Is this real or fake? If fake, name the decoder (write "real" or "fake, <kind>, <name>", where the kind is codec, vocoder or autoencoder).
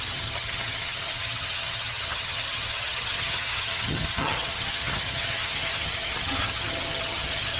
fake, vocoder, HiFi-GAN